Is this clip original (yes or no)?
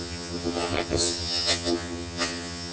no